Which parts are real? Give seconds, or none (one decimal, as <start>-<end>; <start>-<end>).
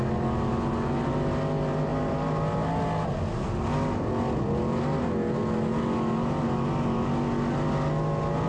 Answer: 0.0-8.5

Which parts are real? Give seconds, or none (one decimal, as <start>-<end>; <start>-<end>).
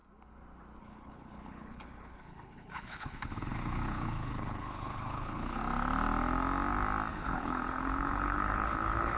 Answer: 0.0-0.8; 5.6-7.1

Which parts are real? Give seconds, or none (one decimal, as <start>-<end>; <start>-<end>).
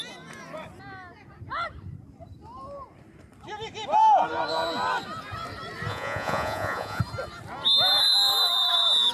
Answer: 0.0-5.9; 7.0-9.1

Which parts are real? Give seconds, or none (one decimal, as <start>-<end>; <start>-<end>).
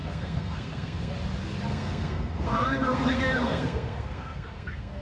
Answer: 1.1-1.7